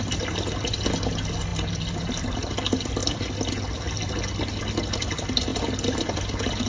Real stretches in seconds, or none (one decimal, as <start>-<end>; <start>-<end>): 0.0-6.7

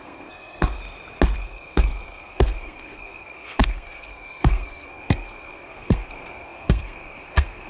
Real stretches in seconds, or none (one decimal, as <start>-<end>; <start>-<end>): 0.8-1.4

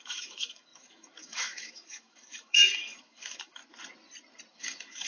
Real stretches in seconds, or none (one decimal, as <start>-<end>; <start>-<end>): 3.6-4.5

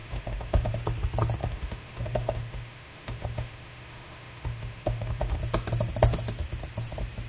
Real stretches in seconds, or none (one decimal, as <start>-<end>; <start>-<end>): 0.7-1.4; 5.4-7.3

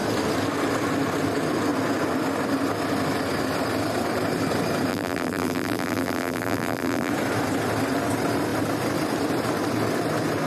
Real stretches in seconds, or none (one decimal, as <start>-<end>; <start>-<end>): 0.0-4.9; 7.1-10.5

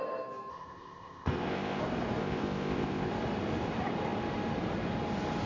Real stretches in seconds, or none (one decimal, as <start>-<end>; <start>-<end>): 0.0-0.5; 1.8-2.2; 3.1-5.5

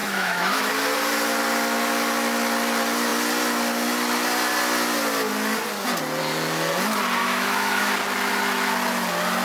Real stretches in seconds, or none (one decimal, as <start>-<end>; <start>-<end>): 0.7-7.2; 7.9-9.4